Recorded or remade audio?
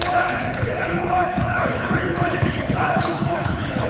remade